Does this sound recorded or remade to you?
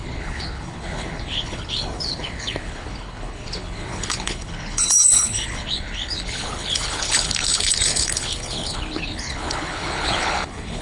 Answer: remade